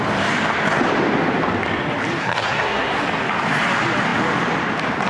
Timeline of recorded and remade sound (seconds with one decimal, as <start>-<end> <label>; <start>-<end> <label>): 0.0-2.2 recorded; 2.2-3.0 remade; 3.0-5.1 recorded